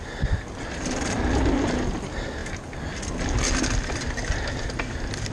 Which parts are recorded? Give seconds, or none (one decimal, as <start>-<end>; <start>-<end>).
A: 0.0-5.3